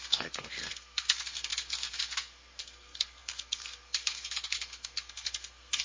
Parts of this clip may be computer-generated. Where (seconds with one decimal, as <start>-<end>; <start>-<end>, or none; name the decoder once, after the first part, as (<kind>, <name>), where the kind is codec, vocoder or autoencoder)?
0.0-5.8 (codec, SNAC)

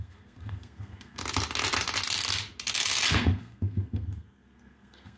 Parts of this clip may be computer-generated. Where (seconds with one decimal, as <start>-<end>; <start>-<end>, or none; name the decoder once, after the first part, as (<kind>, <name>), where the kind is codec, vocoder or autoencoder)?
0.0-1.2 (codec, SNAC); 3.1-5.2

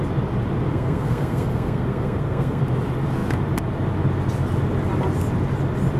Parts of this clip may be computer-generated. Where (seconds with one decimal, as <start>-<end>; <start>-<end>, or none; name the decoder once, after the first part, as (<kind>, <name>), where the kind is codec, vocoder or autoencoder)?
0.7-2.6 (codec, SNAC)

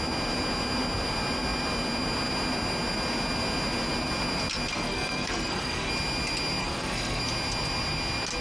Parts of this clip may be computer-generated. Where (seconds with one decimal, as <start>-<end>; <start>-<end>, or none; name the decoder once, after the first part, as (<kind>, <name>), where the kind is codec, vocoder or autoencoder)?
4.7-5.9 (codec, SNAC); 6.6-7.2

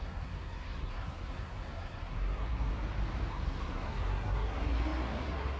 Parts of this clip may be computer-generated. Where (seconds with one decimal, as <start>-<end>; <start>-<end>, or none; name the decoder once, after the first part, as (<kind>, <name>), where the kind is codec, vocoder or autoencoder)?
0.0-2.7 (codec, SNAC); 3.3-5.6